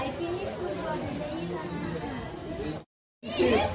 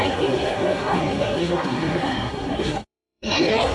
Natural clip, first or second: first